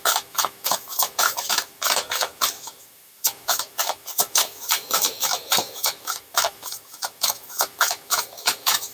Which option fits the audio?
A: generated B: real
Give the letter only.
A